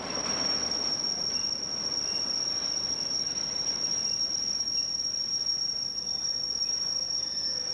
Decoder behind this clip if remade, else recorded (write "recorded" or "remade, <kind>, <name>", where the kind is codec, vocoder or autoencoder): recorded